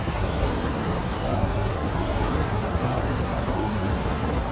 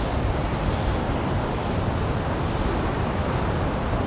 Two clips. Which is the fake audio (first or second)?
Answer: first